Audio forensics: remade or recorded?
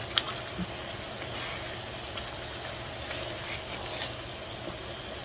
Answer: recorded